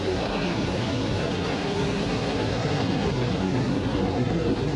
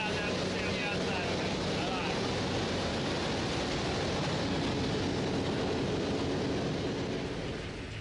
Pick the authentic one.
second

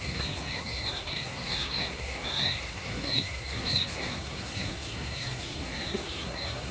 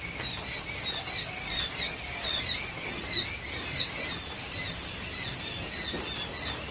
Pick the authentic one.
second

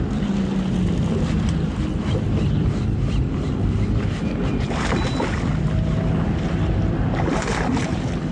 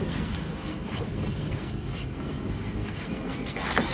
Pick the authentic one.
first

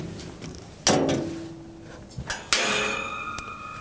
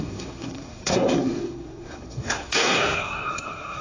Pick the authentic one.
first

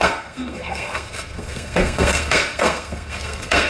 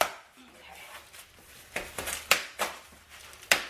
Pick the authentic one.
second